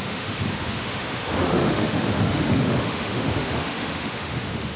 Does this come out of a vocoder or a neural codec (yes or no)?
yes